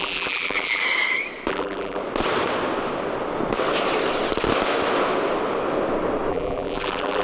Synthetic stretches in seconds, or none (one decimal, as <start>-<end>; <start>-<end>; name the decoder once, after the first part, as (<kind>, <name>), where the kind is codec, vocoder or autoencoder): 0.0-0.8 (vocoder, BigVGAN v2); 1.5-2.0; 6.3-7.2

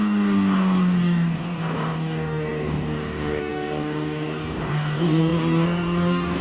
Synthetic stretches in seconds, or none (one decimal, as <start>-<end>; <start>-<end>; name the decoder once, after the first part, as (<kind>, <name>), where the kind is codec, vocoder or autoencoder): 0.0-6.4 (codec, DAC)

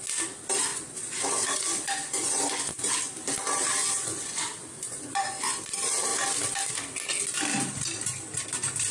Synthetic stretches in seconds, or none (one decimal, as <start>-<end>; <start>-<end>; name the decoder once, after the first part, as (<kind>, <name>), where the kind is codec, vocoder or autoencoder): 0.7-2.9 (vocoder, Vocos); 3.8-5.6